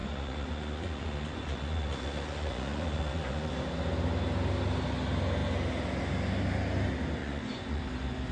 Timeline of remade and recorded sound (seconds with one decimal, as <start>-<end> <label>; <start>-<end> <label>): 0.0-3.5 remade; 3.5-7.2 recorded; 7.2-7.8 remade; 7.8-8.3 recorded